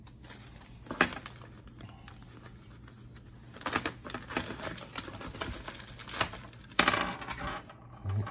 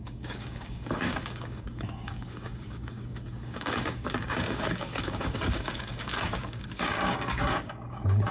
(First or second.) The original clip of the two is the first